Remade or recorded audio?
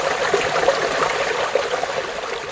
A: recorded